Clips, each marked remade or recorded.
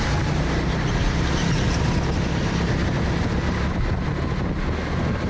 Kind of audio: recorded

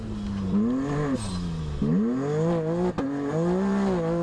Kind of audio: recorded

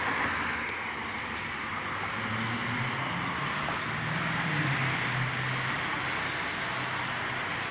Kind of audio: recorded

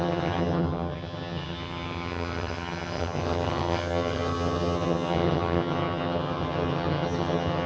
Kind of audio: remade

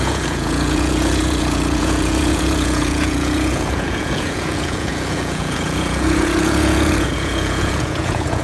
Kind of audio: remade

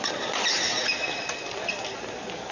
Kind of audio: recorded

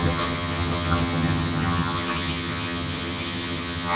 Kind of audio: remade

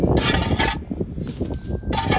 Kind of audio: recorded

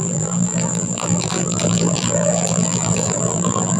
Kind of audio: remade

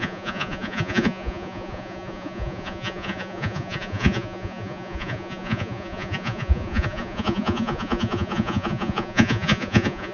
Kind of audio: remade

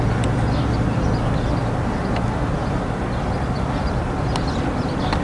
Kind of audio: recorded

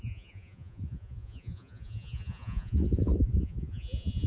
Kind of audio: remade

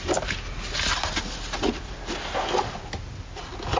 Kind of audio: recorded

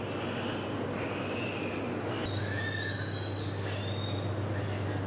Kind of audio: recorded